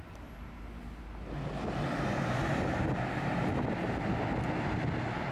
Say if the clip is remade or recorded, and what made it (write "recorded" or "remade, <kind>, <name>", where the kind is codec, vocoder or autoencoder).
recorded